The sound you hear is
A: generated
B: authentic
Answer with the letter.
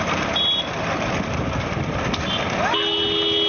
B